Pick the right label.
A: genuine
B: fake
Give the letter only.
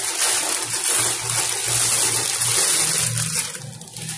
A